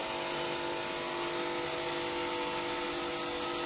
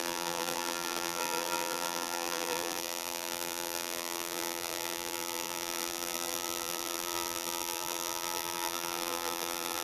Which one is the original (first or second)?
first